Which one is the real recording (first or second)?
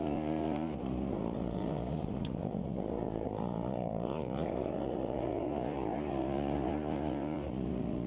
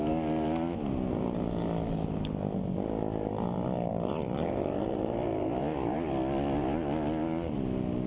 second